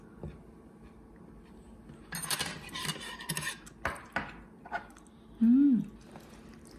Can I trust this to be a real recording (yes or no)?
yes